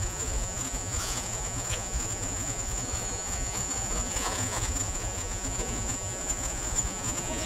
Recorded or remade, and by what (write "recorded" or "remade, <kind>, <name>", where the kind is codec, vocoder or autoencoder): remade, vocoder, Vocos